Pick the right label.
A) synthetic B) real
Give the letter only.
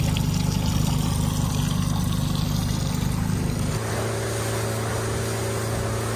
B